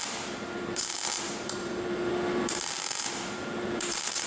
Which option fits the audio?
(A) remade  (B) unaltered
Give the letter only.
A